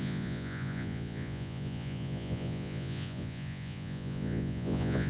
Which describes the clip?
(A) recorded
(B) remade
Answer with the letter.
B